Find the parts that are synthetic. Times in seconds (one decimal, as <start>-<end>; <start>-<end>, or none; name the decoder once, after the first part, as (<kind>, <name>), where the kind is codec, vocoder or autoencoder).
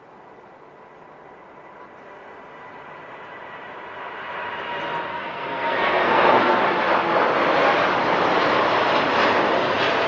5.1-6.6 (codec, SNAC)